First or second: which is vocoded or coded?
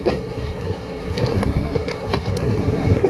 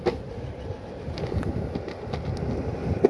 first